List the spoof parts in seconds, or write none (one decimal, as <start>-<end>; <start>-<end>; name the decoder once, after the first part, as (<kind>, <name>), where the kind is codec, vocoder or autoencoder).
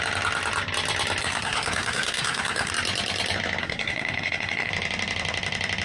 1.2-2.7 (codec, SNAC); 3.6-4.7